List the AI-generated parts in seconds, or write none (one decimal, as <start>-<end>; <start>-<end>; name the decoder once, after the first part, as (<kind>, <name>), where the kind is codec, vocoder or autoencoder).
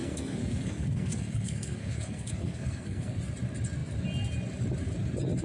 0.0-3.2 (codec, SNAC)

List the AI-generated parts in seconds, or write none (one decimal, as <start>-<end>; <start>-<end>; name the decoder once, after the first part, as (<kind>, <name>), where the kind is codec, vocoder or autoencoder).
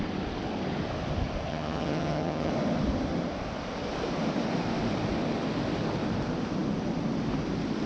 1.5-2.5 (vocoder, HiFi-GAN)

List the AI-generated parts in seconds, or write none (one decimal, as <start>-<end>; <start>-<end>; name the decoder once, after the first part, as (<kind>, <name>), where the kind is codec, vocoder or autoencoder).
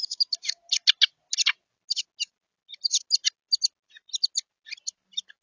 none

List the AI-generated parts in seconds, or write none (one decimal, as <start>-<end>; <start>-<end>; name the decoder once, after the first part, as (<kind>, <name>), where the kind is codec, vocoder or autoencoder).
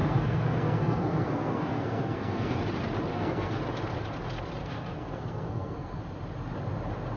0.0-2.6 (codec, SNAC); 3.1-3.6; 4.6-6.0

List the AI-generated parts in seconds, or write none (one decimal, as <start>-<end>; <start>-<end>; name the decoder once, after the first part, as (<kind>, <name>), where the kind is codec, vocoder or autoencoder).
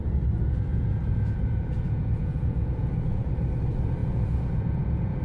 0.7-3.3 (vocoder, Vocos); 4.0-5.2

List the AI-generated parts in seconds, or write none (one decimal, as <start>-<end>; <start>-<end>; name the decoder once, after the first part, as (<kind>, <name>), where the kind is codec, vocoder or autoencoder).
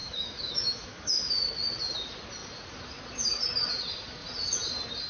0.0-1.3 (autoencoder, DAC-VAE)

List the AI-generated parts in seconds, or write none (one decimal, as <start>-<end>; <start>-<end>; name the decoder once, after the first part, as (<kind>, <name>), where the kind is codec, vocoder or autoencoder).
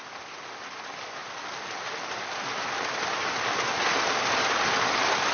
none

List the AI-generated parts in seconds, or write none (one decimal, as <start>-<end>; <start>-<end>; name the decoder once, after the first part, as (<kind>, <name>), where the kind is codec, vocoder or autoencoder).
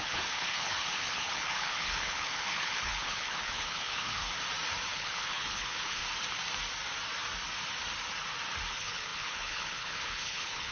0.0-4.2 (codec, HILCodec); 4.9-6.0; 8.7-10.7